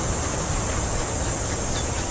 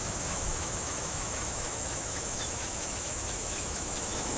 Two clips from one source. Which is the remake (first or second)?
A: second